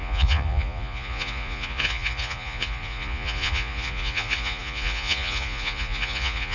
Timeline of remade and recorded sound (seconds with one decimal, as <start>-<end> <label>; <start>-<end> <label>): 0.0-6.5 remade